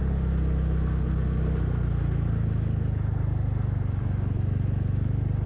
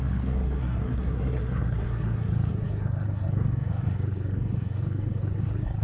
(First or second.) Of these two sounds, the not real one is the second